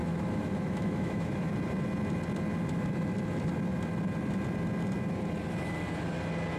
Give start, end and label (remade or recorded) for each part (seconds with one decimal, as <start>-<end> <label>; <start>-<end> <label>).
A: 0.0-1.5 remade; 1.5-6.6 recorded